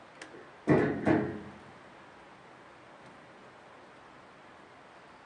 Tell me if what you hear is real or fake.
real